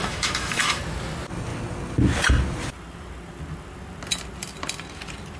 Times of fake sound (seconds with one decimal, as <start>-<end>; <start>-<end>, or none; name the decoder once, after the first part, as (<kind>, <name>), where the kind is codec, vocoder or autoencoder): 0.0-0.8 (autoencoder, DAC-VAE)